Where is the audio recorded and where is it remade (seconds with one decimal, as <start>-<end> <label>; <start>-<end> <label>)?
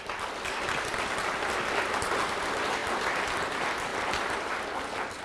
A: 0.0-3.9 recorded; 3.9-4.5 remade; 4.5-5.2 recorded